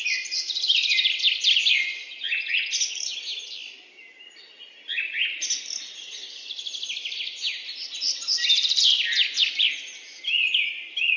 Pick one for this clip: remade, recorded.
recorded